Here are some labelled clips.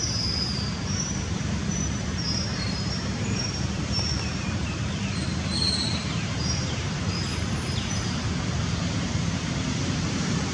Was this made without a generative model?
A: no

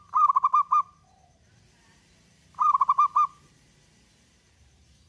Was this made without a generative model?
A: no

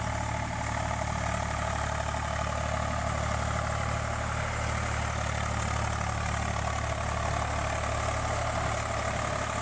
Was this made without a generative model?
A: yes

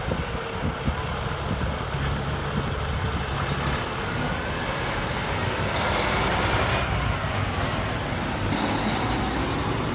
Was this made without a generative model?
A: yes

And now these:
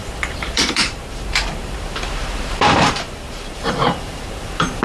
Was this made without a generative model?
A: no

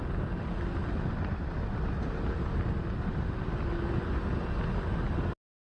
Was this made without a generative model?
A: yes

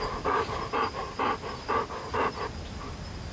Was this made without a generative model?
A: yes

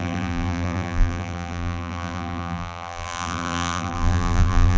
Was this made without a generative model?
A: no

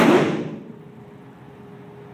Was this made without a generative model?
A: yes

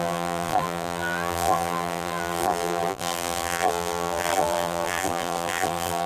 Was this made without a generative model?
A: no